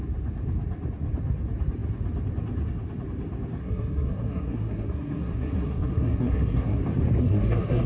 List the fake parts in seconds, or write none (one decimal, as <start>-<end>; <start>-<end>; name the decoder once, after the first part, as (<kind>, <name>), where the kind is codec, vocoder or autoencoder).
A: 3.6-6.8 (codec, SNAC); 7.2-7.9

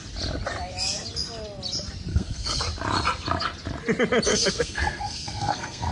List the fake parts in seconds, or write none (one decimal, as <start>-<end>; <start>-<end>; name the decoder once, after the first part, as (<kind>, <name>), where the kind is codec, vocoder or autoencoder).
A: 2.1-2.6 (codec, SNAC); 4.3-5.9

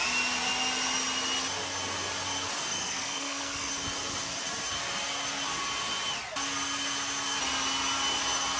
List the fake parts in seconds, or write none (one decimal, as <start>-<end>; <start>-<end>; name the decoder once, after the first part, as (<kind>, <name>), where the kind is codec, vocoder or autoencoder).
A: 2.7-3.7 (codec, SNAC)

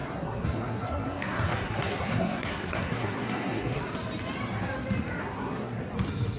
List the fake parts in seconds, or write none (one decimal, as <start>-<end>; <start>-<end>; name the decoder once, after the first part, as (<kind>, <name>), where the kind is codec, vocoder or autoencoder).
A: 0.0-3.8 (codec, SNAC); 5.2-5.8

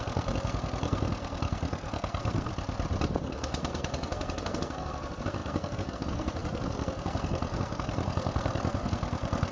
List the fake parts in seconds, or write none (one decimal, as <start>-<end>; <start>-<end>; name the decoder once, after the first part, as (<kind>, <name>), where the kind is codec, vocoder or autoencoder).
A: 0.0-2.5 (codec, SNAC); 3.2-9.5